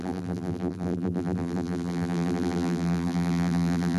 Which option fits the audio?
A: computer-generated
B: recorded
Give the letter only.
A